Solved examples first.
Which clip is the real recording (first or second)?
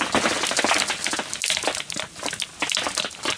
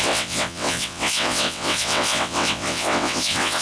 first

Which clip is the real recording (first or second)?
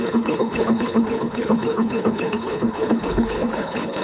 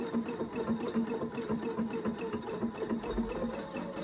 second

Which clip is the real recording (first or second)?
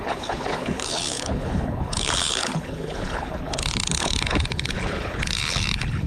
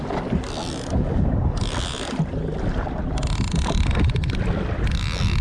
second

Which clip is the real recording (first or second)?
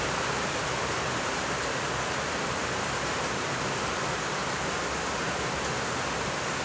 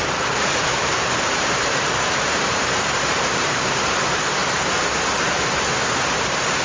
first